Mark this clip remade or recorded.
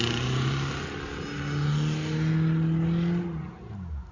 recorded